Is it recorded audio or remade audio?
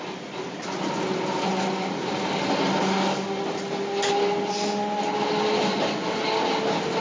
recorded